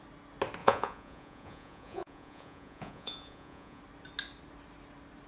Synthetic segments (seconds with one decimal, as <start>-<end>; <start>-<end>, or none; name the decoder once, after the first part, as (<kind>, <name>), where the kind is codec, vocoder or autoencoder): 0.6-3.8 (vocoder, Vocos)